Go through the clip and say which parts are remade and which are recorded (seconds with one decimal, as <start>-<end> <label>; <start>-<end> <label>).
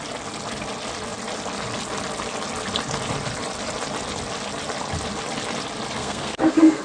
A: 0.0-6.0 recorded; 6.0-6.8 remade